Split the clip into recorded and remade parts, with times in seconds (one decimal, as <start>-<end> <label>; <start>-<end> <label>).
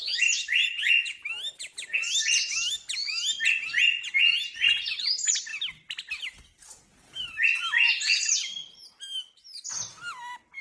0.0-10.6 recorded